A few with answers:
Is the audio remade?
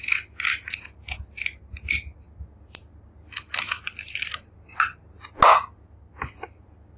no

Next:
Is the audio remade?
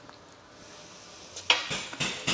no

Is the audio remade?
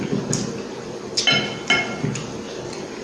no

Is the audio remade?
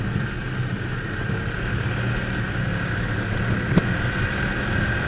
no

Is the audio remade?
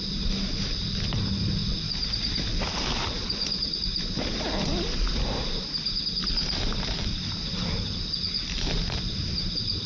no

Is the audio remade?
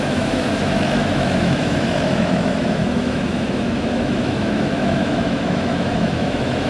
yes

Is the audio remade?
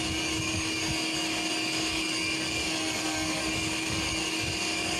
yes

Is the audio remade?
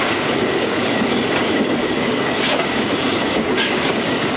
yes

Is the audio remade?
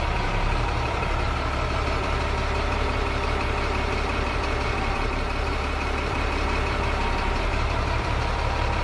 yes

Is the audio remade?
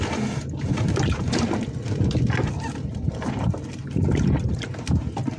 no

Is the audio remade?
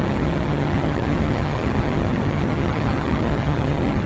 yes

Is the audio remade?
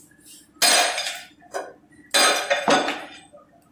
no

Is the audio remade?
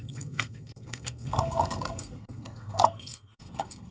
yes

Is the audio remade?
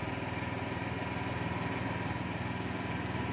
no